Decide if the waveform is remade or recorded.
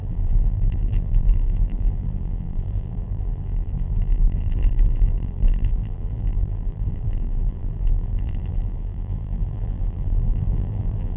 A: remade